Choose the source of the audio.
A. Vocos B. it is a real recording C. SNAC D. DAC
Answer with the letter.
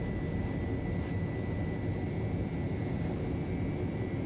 B